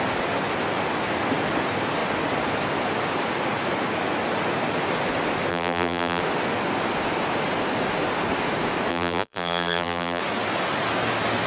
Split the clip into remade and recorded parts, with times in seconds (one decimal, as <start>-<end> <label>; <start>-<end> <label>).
0.0-5.5 recorded; 5.5-6.2 remade; 6.2-8.9 recorded; 8.9-10.2 remade; 10.2-11.5 recorded